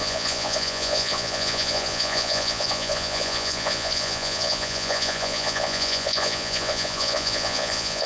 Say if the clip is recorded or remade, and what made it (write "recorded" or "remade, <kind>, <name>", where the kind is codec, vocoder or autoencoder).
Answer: remade, vocoder, Vocos